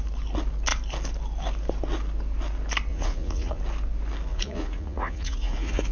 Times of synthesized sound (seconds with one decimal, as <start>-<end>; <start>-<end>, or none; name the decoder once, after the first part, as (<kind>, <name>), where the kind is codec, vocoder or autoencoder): 2.9-3.6 (vocoder, Vocos); 4.3-5.9